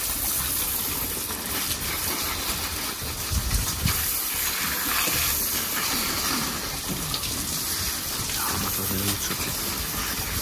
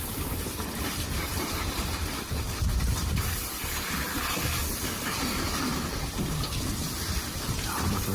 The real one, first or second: first